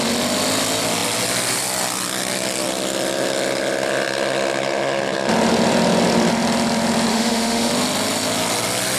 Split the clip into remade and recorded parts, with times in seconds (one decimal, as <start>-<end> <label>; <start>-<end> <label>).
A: 0.0-7.1 recorded; 7.1-7.7 remade; 7.7-9.0 recorded